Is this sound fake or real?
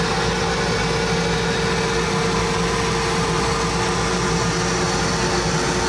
real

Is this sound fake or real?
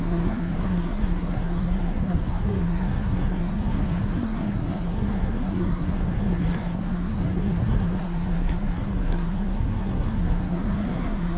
fake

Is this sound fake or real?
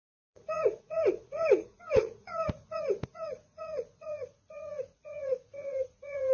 fake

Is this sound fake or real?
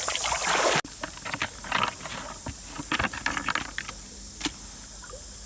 real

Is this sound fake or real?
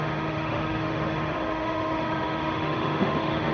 fake